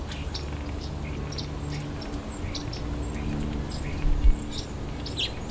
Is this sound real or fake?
real